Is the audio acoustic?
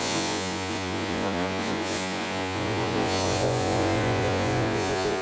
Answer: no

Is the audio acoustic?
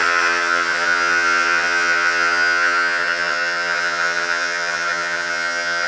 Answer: no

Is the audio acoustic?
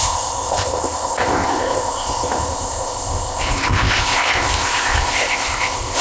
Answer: no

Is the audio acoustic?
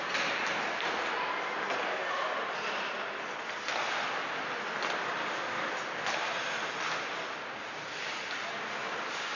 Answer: yes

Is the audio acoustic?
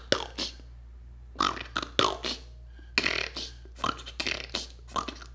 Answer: yes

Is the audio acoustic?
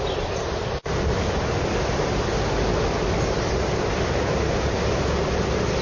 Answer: yes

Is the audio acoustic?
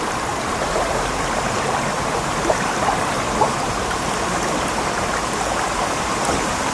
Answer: no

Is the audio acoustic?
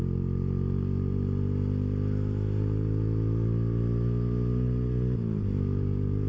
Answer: yes